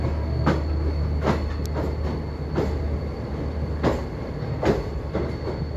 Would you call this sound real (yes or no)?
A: yes